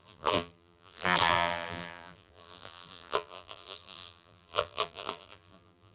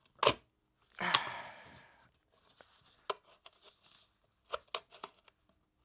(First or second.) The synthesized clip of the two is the first